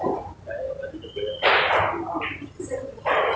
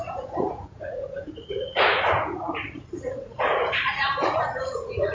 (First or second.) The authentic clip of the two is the first